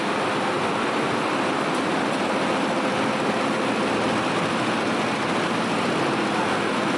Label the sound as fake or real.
real